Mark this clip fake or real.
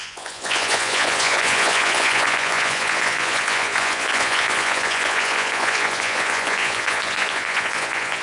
fake